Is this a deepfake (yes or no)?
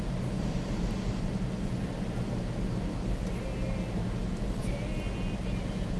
no